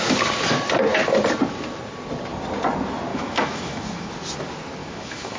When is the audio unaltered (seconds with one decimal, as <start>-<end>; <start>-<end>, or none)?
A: 0.0-3.1; 4.1-4.8